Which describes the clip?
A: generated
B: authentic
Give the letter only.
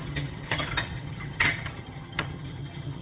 A